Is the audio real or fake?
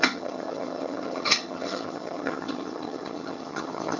fake